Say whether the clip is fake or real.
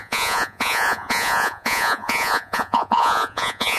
fake